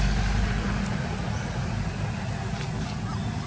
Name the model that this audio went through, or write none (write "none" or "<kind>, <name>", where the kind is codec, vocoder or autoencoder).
none